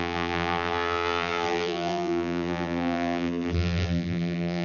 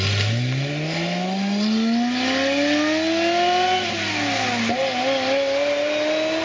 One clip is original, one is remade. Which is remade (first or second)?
first